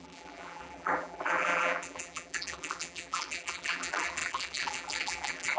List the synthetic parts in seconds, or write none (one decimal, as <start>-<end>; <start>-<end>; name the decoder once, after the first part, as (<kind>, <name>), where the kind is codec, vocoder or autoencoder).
0.0-5.6 (vocoder, BigVGAN v2)